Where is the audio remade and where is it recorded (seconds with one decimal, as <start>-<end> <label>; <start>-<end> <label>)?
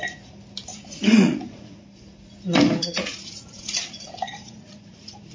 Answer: 0.0-0.7 recorded; 0.7-1.8 remade; 1.8-2.8 recorded; 2.8-5.3 remade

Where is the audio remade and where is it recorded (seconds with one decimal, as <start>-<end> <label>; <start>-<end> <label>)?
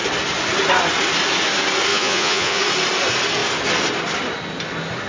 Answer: 0.0-1.9 recorded; 1.9-2.6 remade; 2.6-5.1 recorded